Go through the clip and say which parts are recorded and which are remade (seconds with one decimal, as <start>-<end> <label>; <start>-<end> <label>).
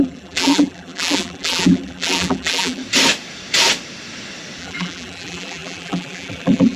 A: 0.0-2.8 remade; 2.8-4.6 recorded; 4.6-6.8 remade